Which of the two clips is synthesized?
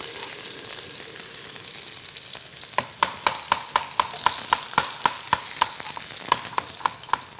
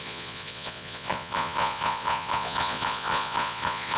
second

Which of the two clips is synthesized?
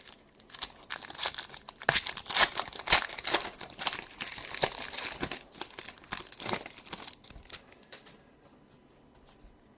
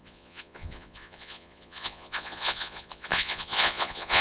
second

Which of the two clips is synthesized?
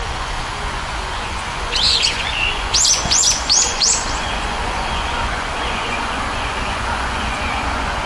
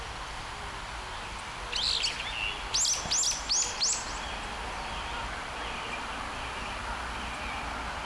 first